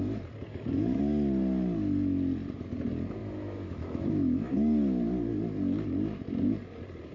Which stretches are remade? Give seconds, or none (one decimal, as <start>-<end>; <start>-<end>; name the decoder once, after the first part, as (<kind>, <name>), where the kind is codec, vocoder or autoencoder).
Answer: 0.5-1.0 (autoencoder, DAC-VAE); 3.2-4.5